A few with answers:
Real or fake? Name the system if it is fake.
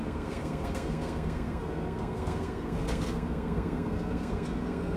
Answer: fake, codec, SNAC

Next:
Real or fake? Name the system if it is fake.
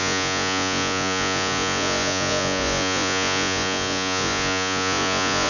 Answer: fake, vocoder, Vocos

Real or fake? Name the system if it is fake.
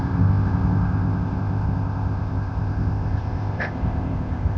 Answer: fake, codec, ZipCodec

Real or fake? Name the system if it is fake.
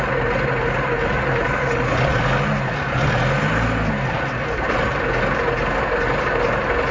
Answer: real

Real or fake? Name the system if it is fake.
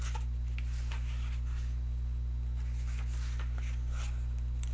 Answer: real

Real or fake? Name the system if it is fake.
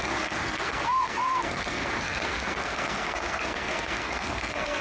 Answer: fake, codec, SNAC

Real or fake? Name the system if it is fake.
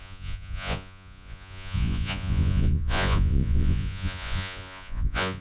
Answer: fake, vocoder, Vocos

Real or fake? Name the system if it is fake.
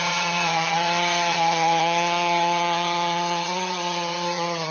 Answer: fake, vocoder, HiFi-GAN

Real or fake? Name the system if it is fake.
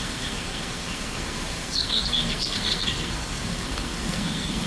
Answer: fake, codec, SNAC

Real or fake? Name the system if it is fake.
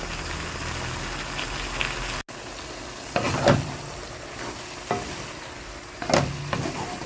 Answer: real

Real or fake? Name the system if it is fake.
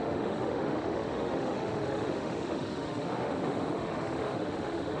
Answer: fake, autoencoder, DAC-VAE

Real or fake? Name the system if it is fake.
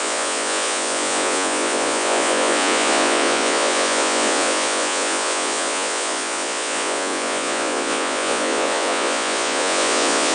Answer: fake, vocoder, Vocos